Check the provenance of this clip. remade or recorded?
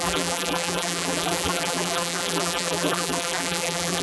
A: remade